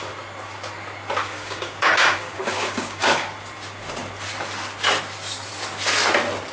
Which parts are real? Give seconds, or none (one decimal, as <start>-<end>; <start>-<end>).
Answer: 0.0-1.2; 3.3-6.5